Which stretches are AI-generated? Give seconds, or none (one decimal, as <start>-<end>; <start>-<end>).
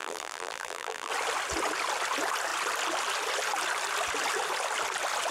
0.0-1.1